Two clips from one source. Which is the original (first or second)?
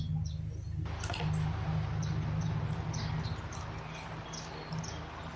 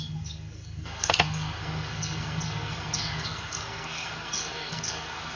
first